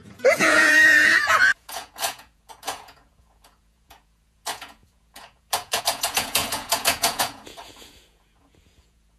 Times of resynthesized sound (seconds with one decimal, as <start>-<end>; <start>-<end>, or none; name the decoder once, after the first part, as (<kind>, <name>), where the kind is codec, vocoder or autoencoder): 0.0-9.2 (vocoder, Vocos)